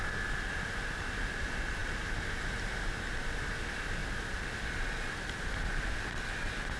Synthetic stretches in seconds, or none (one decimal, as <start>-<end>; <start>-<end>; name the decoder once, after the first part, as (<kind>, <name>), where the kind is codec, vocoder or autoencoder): none